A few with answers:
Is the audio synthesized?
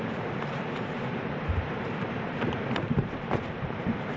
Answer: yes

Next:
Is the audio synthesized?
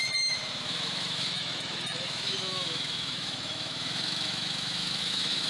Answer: yes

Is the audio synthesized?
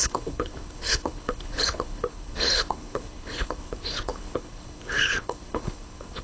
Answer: yes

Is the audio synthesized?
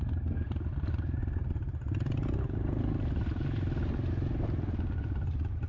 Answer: no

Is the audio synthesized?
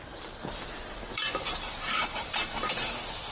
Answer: yes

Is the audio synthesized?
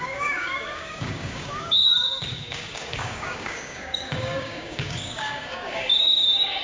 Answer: yes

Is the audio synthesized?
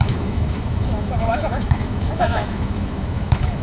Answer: yes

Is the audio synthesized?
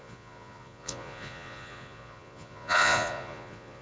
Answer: yes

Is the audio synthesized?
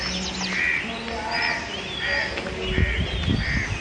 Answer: no